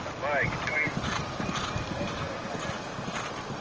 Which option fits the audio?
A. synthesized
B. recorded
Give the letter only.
B